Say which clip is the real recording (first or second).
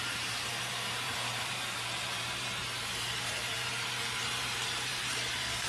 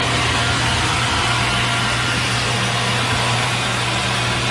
second